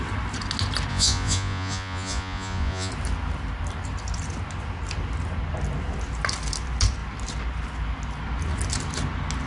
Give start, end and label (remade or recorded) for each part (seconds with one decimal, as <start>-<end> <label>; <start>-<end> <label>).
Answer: 0.0-0.9 recorded; 0.9-2.9 remade; 2.9-9.5 recorded